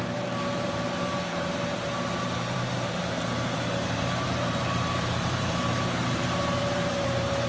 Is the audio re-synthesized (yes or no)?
yes